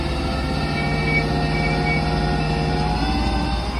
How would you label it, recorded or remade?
recorded